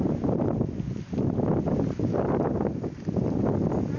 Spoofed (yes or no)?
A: no